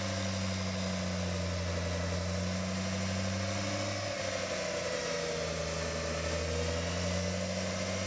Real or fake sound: real